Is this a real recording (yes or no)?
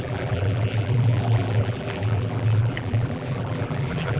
no